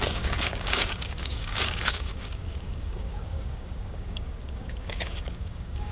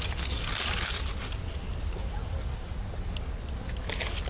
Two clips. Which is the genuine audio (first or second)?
second